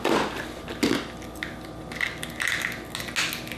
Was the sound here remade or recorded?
recorded